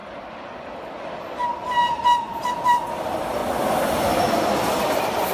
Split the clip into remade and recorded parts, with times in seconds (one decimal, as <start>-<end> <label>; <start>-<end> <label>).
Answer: 0.0-2.9 recorded; 2.9-3.4 remade; 3.4-4.1 recorded; 4.1-5.3 remade